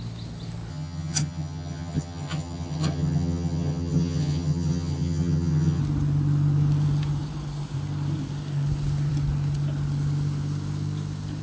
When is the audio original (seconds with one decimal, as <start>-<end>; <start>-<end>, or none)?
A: 0.0-0.7; 5.8-11.4

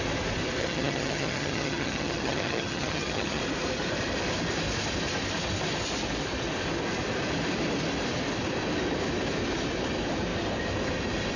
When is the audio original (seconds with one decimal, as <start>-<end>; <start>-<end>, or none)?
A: 0.0-0.6; 3.4-11.4